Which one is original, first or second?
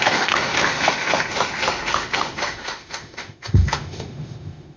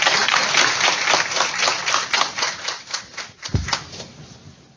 second